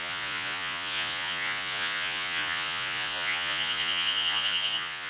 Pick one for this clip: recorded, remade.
remade